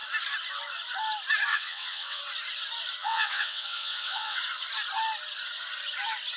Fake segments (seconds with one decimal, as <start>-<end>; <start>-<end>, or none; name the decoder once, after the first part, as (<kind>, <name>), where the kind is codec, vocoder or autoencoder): 1.5-2.2 (vocoder, WaveNeXt); 3.0-4.4